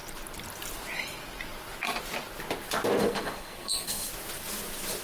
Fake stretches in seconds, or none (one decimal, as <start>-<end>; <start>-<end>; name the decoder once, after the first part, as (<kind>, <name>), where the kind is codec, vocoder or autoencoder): 3.0-4.1 (codec, SNAC)

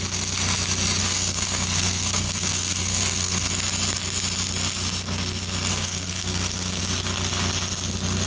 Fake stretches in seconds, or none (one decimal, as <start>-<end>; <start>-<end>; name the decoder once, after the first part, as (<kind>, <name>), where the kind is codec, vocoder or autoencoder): 1.0-3.5 (codec, SNAC); 5.7-6.8

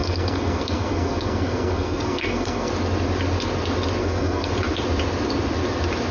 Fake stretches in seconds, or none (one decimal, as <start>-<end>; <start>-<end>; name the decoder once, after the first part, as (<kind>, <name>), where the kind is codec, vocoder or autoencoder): 0.0-2.7 (codec, SNAC); 4.0-4.5

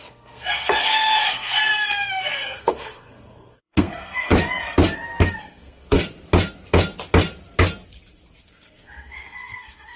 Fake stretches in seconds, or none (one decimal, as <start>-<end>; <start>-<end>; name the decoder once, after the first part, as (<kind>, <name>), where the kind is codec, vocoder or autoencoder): 0.0-4.3 (codec, SNAC); 5.4-6.0; 8.4-10.0

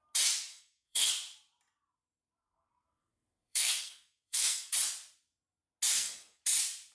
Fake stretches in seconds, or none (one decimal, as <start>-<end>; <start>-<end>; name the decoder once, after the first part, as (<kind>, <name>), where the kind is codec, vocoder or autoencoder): 0.5-1.1 (codec, SNAC); 2.4-4.7; 5.9-6.4